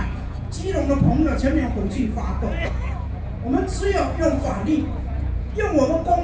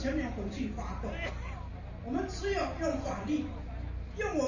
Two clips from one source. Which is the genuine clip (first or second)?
second